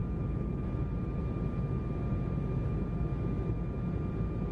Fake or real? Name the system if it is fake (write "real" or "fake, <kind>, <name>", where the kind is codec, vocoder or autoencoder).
real